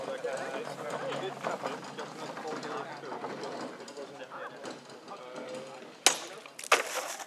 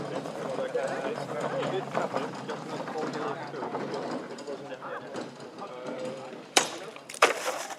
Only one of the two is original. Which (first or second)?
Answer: first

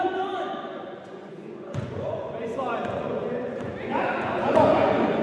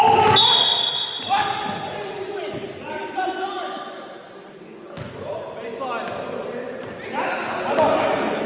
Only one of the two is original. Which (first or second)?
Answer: second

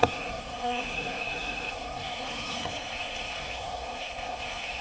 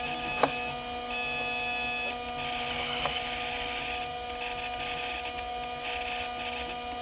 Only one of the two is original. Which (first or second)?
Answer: second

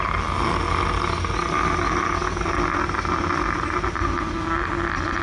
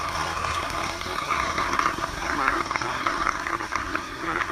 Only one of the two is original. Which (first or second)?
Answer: first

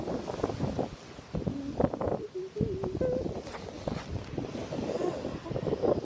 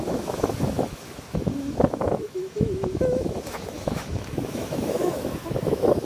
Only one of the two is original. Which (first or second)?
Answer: first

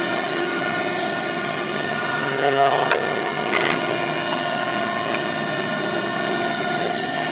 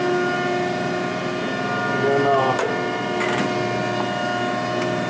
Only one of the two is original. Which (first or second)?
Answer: second